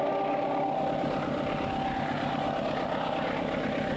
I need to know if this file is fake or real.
real